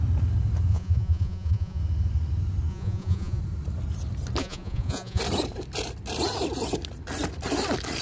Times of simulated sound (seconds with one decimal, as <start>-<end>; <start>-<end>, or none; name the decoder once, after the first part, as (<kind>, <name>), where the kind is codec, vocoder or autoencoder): 0.7-1.8 (vocoder, Vocos); 2.7-3.4; 4.4-5.2